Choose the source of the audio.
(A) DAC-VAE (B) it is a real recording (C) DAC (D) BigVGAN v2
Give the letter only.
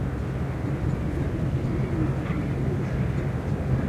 B